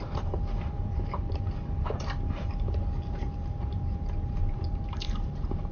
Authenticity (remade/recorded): remade